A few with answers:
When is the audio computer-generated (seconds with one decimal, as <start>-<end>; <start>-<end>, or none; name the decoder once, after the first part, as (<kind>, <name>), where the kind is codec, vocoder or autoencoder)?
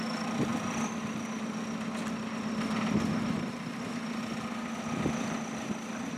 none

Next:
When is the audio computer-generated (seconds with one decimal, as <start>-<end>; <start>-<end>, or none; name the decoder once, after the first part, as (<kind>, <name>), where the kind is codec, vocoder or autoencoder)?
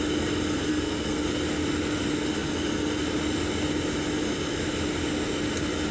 0.7-1.3 (codec, SNAC)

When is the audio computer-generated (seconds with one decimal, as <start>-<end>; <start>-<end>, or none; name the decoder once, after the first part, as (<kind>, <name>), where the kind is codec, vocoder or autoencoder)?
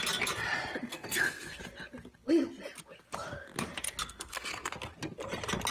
0.9-1.6 (codec, SNAC); 4.0-4.8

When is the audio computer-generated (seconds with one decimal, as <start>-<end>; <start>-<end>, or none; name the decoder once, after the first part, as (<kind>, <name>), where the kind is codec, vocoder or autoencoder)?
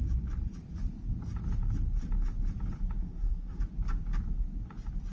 3.0-3.6 (codec, SNAC)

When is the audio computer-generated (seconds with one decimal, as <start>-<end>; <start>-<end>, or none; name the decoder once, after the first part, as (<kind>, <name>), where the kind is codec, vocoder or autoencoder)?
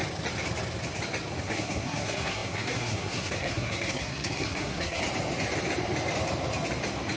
1.4-5.0 (codec, SNAC)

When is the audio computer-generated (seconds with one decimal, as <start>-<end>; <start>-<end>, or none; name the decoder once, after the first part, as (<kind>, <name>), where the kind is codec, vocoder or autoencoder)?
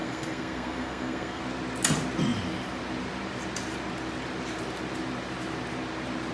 0.0-1.4 (codec, SNAC)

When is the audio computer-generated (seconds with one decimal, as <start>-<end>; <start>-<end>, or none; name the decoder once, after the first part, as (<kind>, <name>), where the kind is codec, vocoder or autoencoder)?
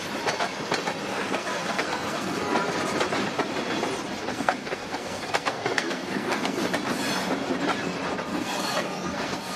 1.1-2.4 (codec, SNAC); 4.2-6.6; 8.3-9.6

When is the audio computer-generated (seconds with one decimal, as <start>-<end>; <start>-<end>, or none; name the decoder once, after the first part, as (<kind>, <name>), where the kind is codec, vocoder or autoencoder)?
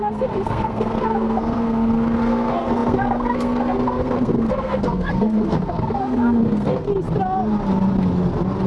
0.0-6.9 (codec, SNAC)